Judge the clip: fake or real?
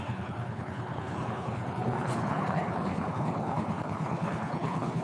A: fake